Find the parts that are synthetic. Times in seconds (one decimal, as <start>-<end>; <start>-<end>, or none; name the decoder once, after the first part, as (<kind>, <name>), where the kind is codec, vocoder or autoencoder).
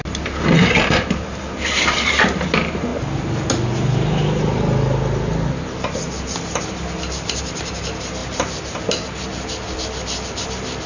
none